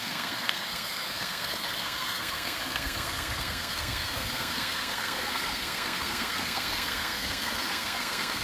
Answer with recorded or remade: remade